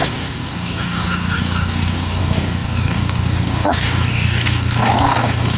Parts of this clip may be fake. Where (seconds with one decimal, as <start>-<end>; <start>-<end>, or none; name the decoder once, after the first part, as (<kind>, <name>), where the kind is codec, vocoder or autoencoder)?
0.0-5.6 (codec, DAC)